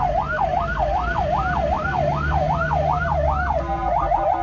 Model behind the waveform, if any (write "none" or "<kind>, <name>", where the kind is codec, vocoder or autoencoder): none